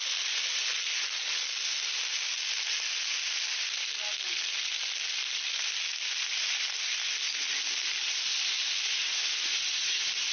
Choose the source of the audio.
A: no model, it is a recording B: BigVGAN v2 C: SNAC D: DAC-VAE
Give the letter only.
A